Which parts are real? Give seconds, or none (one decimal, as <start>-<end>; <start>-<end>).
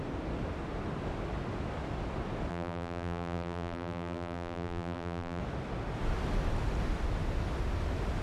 0.0-2.5; 5.4-8.2